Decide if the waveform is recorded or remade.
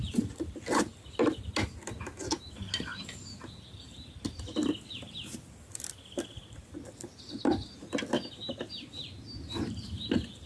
recorded